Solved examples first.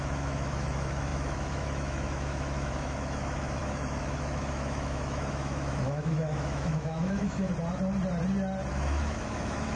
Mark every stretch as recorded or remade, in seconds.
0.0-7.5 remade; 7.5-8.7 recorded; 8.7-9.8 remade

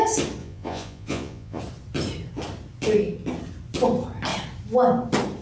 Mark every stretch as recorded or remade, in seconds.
0.0-0.4 recorded; 0.4-1.6 remade; 1.6-5.4 recorded

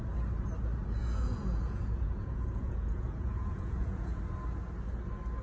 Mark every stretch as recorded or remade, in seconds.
0.0-1.0 recorded; 1.0-4.2 remade; 4.2-5.4 recorded

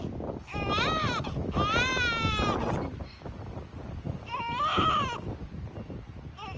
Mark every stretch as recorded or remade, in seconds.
0.0-0.5 recorded; 0.5-1.3 remade; 1.3-6.6 recorded

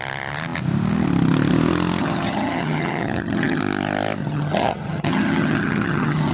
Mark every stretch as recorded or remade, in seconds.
0.0-2.0 recorded; 2.0-3.6 remade; 3.6-4.2 recorded; 4.2-6.3 remade

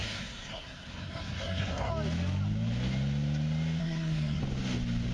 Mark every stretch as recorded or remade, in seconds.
0.0-1.9 remade; 1.9-3.8 recorded; 3.8-4.4 remade; 4.4-5.1 recorded

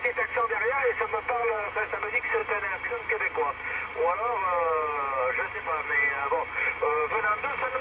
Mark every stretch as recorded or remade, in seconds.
0.0-1.1 recorded; 1.1-2.0 remade; 2.0-7.8 recorded

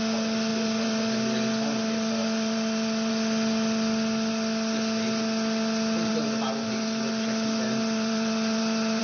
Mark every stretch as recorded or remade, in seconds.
0.0-0.5 recorded; 0.5-3.1 remade; 3.1-6.1 recorded; 6.1-9.0 remade